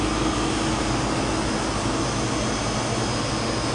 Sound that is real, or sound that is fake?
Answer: real